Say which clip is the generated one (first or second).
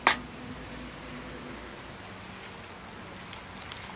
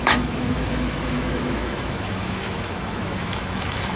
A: second